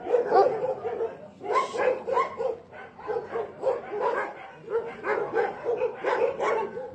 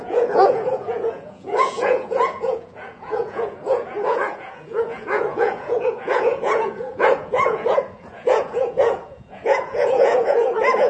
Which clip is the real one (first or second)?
first